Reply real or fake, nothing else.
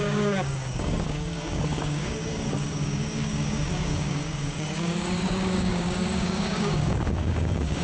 fake